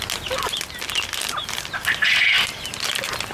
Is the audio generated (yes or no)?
no